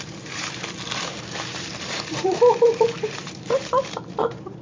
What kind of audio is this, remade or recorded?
remade